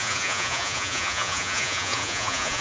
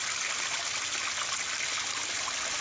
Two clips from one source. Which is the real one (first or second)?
second